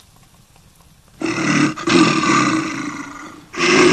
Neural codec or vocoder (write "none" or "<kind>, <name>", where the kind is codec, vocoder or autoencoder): none